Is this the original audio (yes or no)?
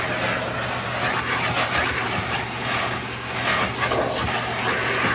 yes